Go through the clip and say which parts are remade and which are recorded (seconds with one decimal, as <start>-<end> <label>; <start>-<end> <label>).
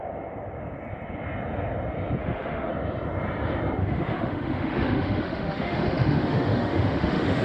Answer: 0.0-2.2 recorded; 2.2-2.7 remade; 2.7-3.8 recorded; 3.8-7.4 remade